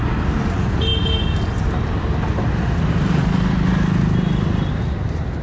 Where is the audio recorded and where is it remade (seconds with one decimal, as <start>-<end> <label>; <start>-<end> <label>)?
0.0-5.4 recorded